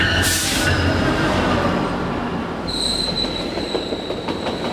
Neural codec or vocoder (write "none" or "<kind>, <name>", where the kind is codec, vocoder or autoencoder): vocoder, BigVGAN v2